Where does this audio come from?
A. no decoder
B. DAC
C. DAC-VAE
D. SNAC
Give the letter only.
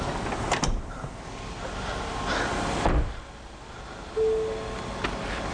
A